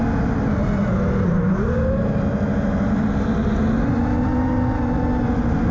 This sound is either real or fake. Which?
real